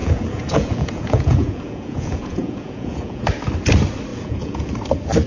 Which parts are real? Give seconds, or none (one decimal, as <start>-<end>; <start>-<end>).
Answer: 3.2-4.1; 4.7-5.3